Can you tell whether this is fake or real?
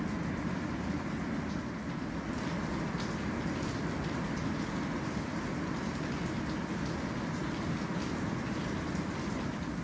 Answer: real